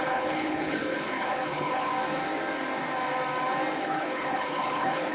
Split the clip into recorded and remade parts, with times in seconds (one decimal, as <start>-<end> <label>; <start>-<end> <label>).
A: 0.0-1.9 remade; 1.9-3.8 recorded; 3.8-5.1 remade